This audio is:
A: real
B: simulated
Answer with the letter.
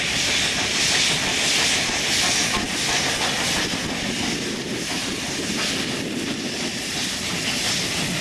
A